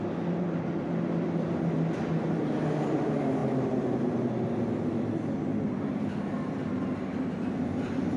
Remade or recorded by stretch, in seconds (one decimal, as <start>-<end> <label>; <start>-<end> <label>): 0.0-8.2 recorded